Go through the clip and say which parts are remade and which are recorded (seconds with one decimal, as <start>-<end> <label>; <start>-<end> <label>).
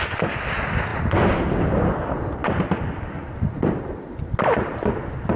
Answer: 0.0-5.4 recorded